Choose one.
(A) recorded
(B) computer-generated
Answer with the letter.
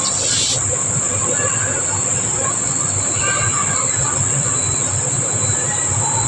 A